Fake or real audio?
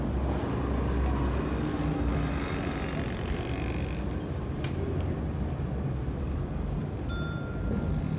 real